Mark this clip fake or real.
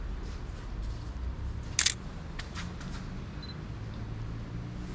real